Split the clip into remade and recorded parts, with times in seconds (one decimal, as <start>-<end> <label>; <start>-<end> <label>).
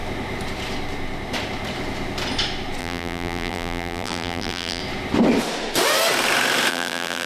0.0-2.8 recorded; 2.8-4.8 remade; 4.8-6.7 recorded; 6.7-7.3 remade